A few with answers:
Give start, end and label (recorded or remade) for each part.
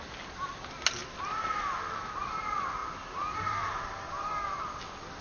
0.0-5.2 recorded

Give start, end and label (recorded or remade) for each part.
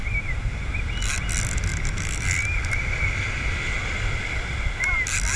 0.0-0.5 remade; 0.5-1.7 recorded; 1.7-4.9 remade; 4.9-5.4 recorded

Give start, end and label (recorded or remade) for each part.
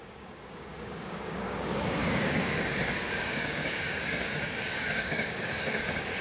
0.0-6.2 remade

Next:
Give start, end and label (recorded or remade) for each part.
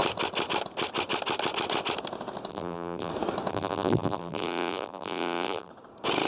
0.0-2.5 recorded; 2.5-3.1 remade; 3.1-3.5 recorded; 3.5-5.7 remade; 5.7-6.3 recorded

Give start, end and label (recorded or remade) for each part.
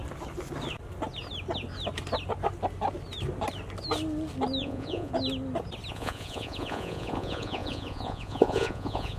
0.0-4.6 recorded; 4.6-5.1 remade; 5.1-5.9 recorded; 5.9-9.2 remade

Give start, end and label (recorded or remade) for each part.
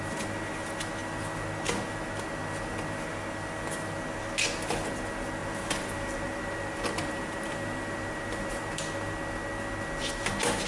0.0-5.4 recorded; 5.4-8.7 remade; 8.7-10.7 recorded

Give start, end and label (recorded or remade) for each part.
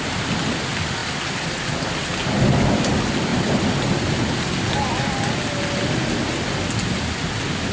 0.0-7.7 recorded